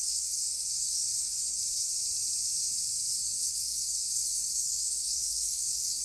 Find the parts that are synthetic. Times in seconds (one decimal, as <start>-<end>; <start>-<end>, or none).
0.0-1.6; 3.1-6.0